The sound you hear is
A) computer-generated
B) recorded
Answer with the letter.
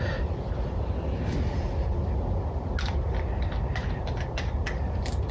B